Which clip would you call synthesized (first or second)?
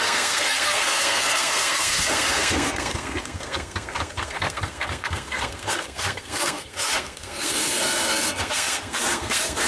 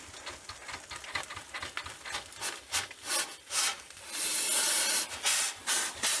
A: first